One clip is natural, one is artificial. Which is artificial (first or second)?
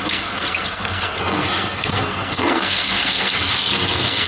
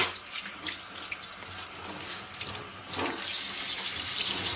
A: first